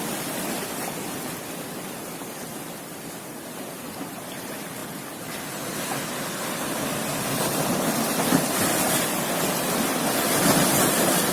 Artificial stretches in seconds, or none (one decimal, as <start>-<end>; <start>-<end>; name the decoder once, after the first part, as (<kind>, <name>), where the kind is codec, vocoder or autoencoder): none